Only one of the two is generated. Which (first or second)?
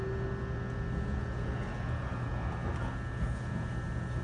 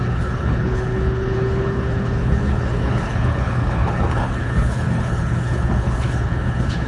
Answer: second